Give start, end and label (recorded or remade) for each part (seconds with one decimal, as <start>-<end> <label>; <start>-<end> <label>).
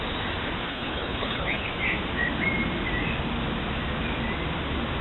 0.0-0.7 recorded; 0.7-1.7 remade; 1.7-5.0 recorded